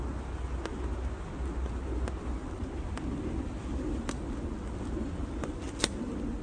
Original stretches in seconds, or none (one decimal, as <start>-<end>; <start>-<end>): 0.0-6.4